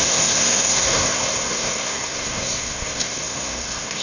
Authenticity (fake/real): fake